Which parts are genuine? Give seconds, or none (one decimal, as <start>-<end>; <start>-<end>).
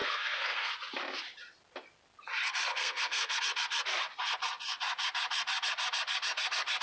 0.7-2.7; 3.4-6.8